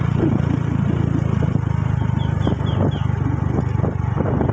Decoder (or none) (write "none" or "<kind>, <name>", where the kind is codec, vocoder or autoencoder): none